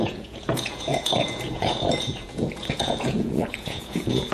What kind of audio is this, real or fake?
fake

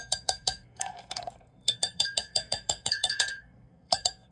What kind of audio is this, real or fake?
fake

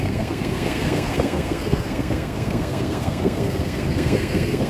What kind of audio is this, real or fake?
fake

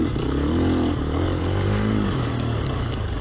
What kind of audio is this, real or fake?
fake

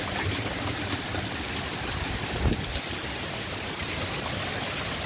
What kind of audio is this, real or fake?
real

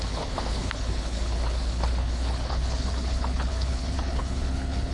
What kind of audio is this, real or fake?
fake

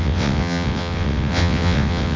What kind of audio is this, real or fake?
fake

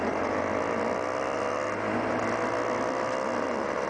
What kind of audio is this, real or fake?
real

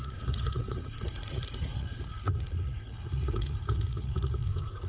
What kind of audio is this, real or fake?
fake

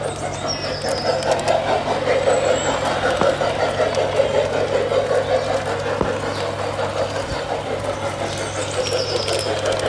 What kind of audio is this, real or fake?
real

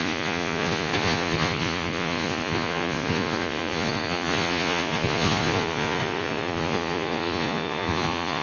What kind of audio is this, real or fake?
fake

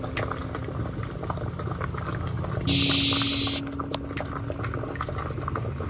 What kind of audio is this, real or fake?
real